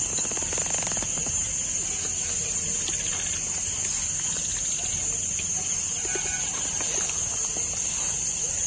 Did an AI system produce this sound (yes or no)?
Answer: no